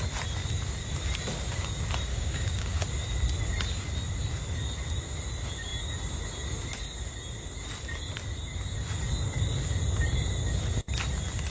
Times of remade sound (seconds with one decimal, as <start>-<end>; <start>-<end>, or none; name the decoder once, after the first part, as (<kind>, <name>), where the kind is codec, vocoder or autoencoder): 2.1-2.8 (codec, DAC)